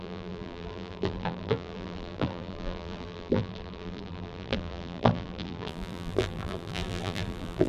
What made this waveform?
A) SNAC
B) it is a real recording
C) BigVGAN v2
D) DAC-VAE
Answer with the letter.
C